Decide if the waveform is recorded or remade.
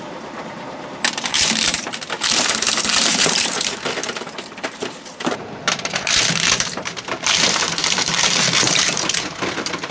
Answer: remade